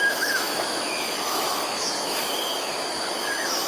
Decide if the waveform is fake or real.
fake